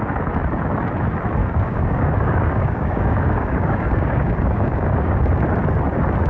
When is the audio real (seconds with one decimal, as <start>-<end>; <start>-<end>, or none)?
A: 0.0-1.4; 5.2-6.3